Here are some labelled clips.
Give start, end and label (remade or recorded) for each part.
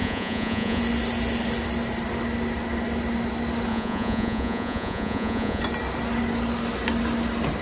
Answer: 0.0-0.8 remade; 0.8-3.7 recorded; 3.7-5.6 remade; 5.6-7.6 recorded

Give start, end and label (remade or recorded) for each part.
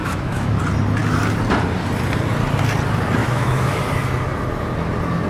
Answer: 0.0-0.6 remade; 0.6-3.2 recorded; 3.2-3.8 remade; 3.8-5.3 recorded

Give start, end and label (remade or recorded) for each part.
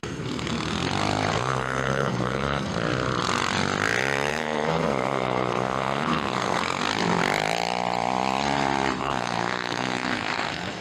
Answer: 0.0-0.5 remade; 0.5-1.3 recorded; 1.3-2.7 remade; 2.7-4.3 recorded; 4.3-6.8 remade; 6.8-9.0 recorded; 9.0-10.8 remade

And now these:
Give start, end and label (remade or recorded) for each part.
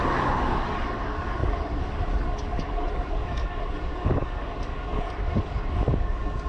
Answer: 0.0-6.5 remade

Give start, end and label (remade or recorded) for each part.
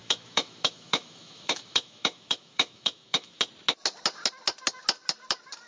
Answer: 0.0-3.4 remade; 3.4-5.7 recorded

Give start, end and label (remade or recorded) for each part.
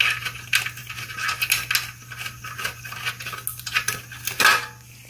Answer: 0.0-5.1 recorded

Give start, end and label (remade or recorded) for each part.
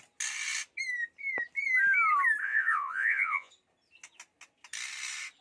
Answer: 0.0-2.4 recorded; 2.4-3.5 remade; 3.5-5.4 recorded